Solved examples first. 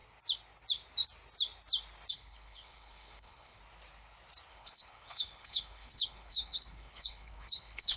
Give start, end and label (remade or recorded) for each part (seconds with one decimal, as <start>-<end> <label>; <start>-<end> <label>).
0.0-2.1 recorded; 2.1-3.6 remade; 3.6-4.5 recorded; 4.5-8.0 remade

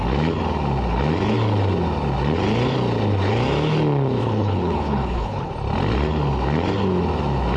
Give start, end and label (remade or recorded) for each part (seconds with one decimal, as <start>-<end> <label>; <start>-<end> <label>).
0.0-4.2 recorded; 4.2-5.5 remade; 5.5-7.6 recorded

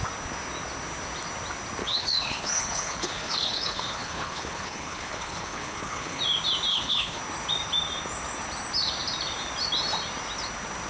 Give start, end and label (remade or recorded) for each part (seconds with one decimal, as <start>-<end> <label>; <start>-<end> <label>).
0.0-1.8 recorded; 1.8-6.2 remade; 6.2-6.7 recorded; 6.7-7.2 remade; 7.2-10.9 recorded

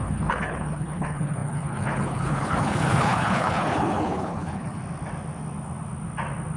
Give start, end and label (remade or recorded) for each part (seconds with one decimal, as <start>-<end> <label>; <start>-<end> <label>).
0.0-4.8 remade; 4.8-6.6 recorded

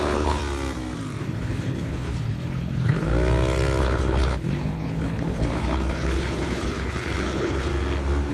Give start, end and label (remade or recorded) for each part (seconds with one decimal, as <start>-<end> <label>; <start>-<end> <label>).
0.0-0.4 remade; 0.4-1.2 recorded; 1.2-3.1 remade; 3.1-3.8 recorded; 3.8-7.7 remade; 7.7-8.3 recorded